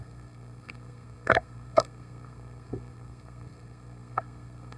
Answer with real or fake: fake